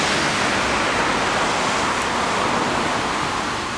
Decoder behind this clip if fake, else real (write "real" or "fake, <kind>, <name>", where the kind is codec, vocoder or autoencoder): real